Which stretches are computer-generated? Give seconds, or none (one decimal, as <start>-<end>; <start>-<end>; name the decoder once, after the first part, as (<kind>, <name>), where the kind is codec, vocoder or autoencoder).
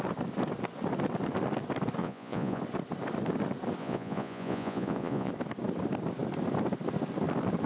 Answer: 2.0-2.6 (vocoder, Vocos); 3.8-5.3